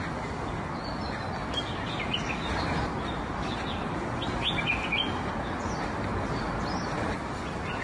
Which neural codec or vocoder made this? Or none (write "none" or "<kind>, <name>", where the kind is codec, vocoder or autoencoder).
none